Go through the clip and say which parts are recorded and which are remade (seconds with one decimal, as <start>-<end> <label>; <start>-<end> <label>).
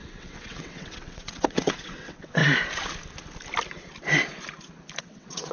0.0-2.4 remade; 2.4-5.0 recorded; 5.0-5.5 remade